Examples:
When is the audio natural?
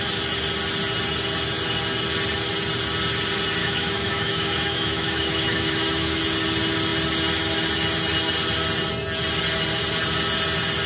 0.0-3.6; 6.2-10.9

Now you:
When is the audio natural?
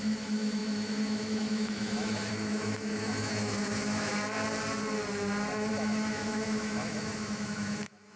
4.1-5.7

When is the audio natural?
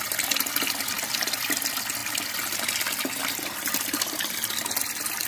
0.0-5.3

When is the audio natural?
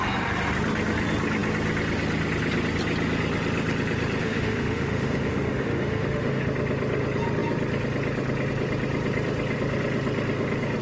0.0-4.2; 6.4-10.8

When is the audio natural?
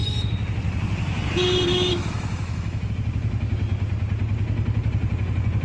0.0-1.7; 2.9-5.6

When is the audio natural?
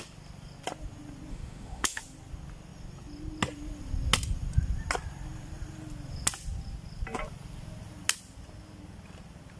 0.0-1.3; 2.0-9.6